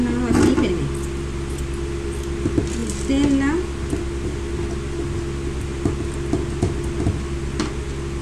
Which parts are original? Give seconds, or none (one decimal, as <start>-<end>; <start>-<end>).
0.0-8.2